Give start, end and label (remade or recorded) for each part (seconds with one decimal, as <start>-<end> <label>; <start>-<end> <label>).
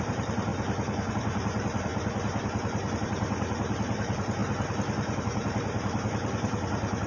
0.0-0.5 remade; 0.5-1.1 recorded; 1.1-1.9 remade; 1.9-3.0 recorded; 3.0-4.4 remade; 4.4-5.2 recorded; 5.2-7.1 remade